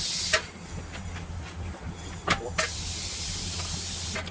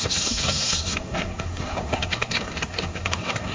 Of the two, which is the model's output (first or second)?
second